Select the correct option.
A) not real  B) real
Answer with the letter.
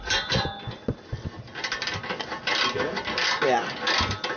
B